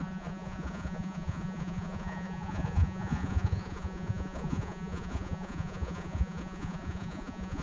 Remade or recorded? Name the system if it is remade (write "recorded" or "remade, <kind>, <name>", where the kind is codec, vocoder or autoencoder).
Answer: remade, vocoder, Vocos